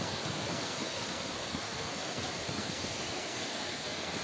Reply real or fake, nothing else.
fake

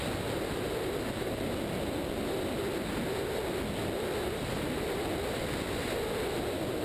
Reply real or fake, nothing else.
real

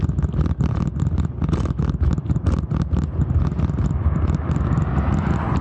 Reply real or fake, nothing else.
real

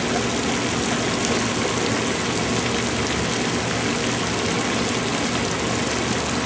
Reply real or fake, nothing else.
real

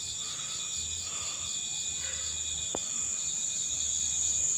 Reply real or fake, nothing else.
real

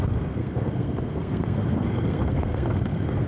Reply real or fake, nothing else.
fake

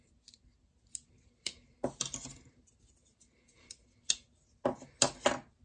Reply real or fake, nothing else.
real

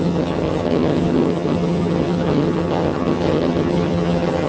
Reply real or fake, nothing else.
fake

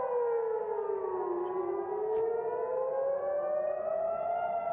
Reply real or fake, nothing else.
real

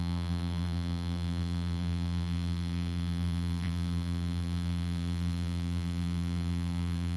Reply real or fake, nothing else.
fake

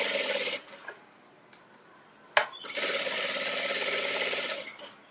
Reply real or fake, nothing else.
real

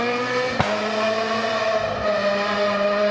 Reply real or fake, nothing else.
real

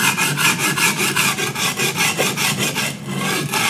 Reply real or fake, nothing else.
real